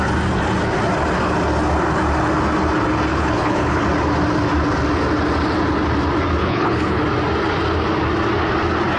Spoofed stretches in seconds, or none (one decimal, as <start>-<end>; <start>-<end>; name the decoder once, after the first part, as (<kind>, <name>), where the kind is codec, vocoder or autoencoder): 3.1-3.8 (codec, HILCodec); 6.4-7.0